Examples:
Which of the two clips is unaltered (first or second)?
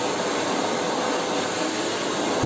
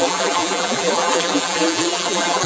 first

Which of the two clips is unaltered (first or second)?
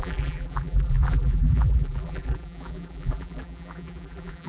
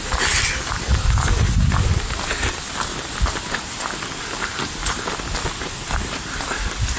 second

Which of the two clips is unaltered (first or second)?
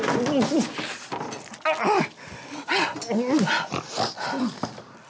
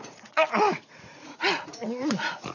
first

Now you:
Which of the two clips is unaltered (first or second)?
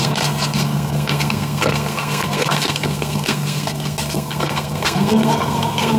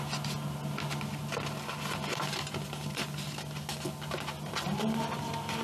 second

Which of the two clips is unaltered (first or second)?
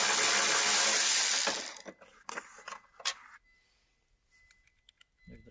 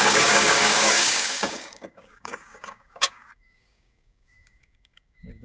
first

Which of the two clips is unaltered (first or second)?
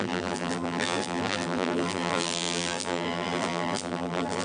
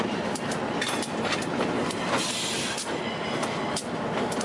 second